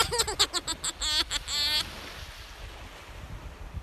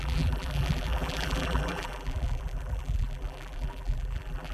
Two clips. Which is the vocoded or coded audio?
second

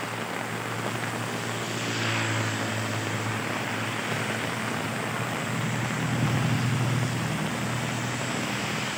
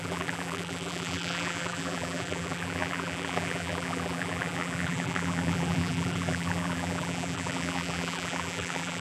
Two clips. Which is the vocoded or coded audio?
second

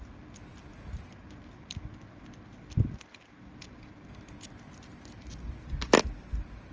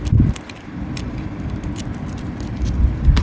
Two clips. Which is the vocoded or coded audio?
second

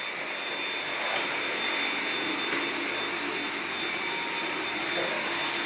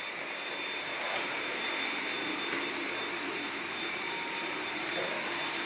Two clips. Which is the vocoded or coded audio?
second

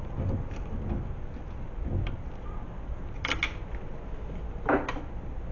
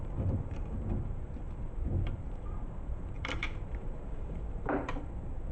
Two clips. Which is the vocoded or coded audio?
second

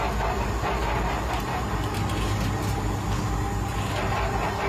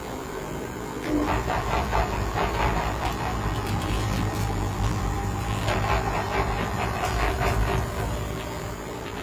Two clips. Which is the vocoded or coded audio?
second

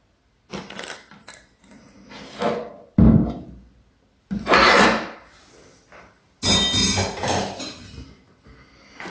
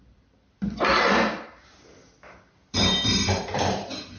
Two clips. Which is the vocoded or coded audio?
second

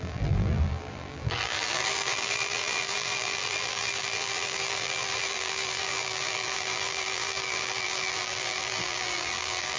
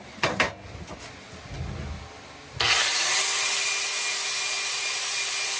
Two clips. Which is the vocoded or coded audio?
first